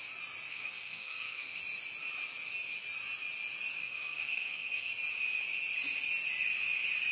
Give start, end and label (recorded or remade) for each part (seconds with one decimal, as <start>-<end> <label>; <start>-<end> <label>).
0.0-0.5 recorded; 0.5-1.6 remade; 1.6-3.8 recorded; 3.8-4.9 remade; 4.9-7.1 recorded